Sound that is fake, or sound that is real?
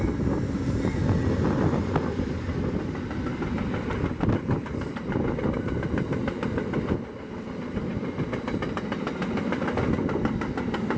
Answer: real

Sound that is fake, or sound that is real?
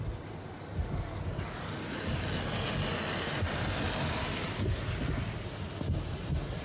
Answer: real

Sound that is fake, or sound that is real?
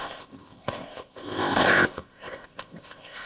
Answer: fake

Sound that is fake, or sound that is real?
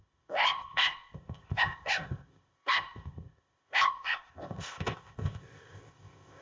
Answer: fake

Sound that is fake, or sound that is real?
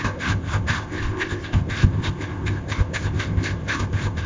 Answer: fake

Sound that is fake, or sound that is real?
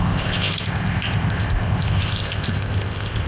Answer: fake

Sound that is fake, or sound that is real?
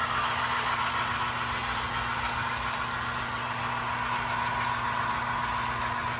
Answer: real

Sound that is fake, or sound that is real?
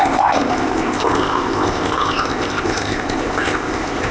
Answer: fake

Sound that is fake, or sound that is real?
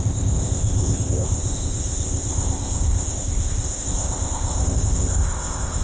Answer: fake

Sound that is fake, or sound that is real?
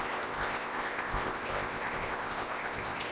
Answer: fake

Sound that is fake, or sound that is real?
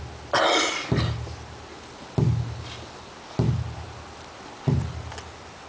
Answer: real